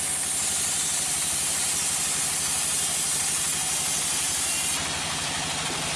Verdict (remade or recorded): recorded